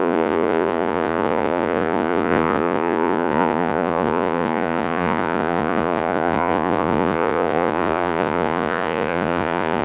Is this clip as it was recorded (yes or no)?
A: no